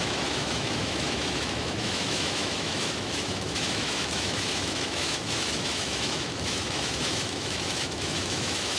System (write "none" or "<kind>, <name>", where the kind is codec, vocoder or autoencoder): autoencoder, DAC-VAE